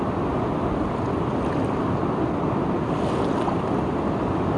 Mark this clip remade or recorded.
recorded